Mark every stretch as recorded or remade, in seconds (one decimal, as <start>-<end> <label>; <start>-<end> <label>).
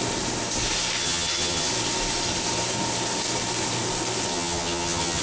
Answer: 0.0-1.0 recorded; 1.0-1.7 remade; 1.7-4.3 recorded; 4.3-5.2 remade